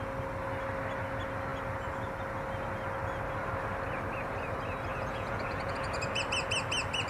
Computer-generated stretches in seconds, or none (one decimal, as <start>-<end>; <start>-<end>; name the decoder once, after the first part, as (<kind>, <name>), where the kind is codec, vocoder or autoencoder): 4.9-6.2 (vocoder, Vocos)